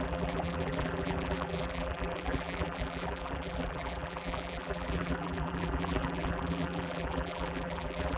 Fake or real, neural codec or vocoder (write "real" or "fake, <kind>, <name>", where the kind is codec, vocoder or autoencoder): fake, vocoder, BigVGAN v2